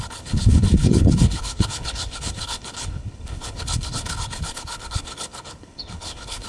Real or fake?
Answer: fake